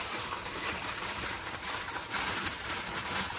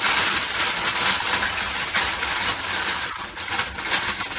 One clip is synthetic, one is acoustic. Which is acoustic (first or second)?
second